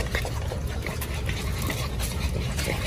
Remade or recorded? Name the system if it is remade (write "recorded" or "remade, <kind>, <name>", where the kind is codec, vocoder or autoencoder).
recorded